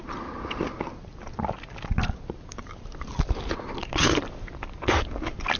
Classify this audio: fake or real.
real